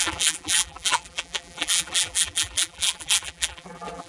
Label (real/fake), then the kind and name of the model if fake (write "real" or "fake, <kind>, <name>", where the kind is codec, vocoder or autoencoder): fake, vocoder, BigVGAN v2